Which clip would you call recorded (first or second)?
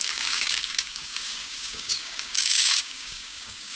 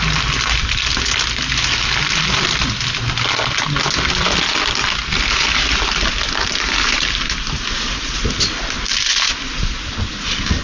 second